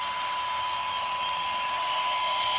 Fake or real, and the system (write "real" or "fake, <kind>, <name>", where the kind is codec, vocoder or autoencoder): real